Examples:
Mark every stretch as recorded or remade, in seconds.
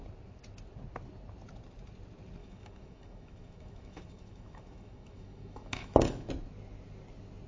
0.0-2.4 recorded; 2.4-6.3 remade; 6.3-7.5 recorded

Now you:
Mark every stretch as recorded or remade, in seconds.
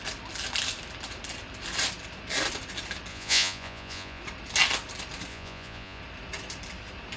0.0-3.1 recorded; 3.1-4.2 remade; 4.2-5.3 recorded; 5.3-6.0 remade; 6.0-7.2 recorded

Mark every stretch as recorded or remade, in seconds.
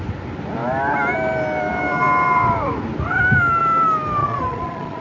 0.0-4.2 recorded; 4.2-5.0 remade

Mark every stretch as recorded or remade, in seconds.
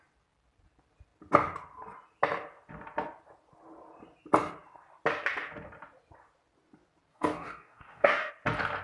0.0-7.1 recorded; 7.1-8.3 remade; 8.3-8.8 recorded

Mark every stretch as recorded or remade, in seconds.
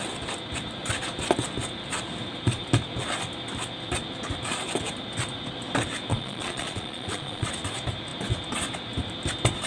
0.0-6.1 recorded; 6.1-7.5 remade; 7.5-9.7 recorded